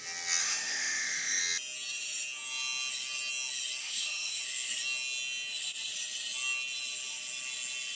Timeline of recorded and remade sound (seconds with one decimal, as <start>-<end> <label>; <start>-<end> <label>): 0.0-0.4 recorded; 0.4-1.4 remade; 1.4-3.8 recorded; 3.8-4.4 remade; 4.4-8.0 recorded